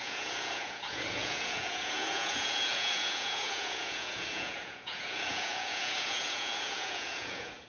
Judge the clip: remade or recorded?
remade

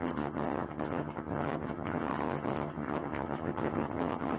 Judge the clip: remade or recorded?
remade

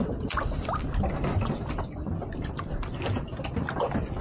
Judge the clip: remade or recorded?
recorded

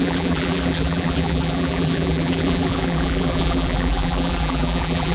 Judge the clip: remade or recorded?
remade